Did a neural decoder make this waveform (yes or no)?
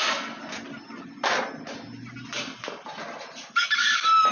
no